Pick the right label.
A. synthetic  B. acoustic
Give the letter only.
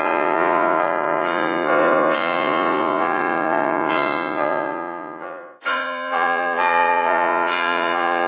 A